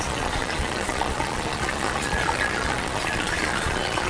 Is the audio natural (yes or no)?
no